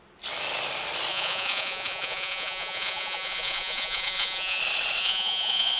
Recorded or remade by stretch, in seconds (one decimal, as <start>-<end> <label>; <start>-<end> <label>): 0.0-1.1 recorded; 1.1-4.6 remade; 4.6-5.0 recorded; 5.0-5.8 remade